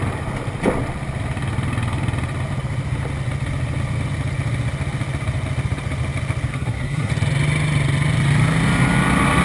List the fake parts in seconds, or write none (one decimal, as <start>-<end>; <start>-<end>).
6.5-7.1